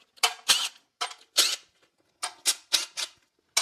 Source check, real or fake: real